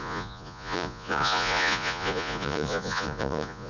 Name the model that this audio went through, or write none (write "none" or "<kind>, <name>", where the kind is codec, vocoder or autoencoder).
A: vocoder, Vocos